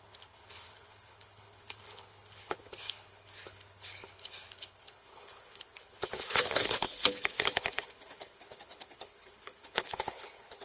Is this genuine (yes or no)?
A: no